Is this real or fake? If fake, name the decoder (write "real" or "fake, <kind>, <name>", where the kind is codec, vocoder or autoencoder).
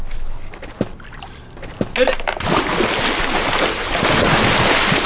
real